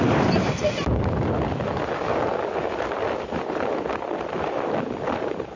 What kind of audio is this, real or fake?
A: real